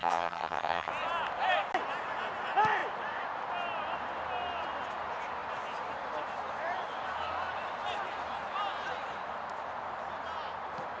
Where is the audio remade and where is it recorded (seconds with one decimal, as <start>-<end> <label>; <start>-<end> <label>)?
0.0-0.9 remade; 0.9-11.0 recorded